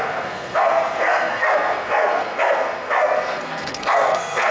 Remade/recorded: remade